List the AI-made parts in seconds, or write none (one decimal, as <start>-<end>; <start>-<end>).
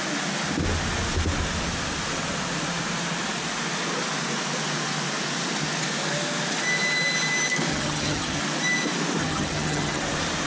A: 7.7-8.4; 9.2-10.0